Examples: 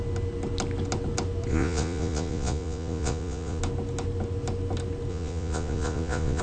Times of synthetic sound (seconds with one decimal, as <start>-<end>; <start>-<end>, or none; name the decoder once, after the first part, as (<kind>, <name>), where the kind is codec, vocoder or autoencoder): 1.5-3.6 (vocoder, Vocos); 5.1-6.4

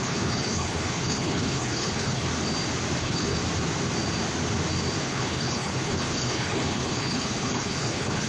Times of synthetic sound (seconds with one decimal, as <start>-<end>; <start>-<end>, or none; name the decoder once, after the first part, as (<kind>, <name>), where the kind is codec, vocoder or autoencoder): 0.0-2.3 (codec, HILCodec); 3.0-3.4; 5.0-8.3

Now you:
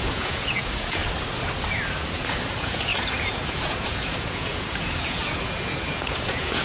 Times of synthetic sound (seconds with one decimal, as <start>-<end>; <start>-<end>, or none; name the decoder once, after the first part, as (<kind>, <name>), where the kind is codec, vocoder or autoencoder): 0.0-1.0 (vocoder, Vocos); 1.9-6.6